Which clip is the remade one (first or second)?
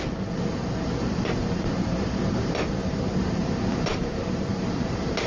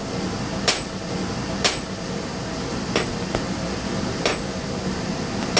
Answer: first